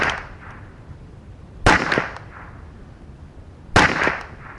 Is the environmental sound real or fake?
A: real